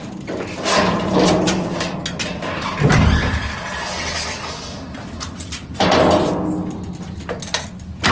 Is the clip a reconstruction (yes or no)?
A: no